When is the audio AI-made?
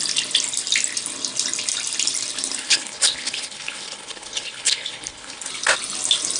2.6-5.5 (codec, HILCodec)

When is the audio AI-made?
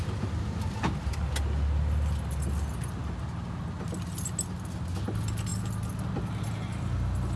none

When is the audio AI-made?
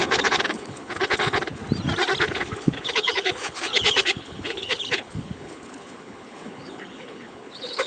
0.0-1.6 (codec, HILCodec); 2.2-7.9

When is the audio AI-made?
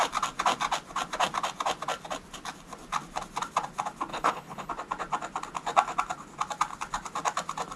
4.1-4.7 (codec, HILCodec)